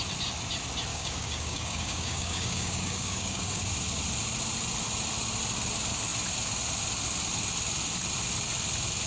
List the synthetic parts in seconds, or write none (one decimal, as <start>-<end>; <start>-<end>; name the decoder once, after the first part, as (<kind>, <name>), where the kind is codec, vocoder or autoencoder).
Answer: 0.9-3.6 (codec, DAC)